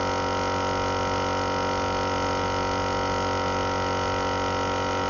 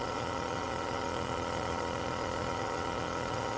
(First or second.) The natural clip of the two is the first